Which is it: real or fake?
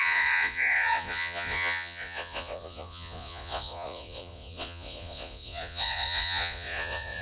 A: fake